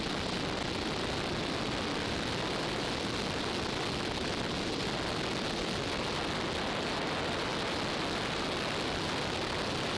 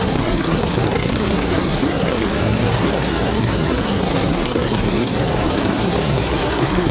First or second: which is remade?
second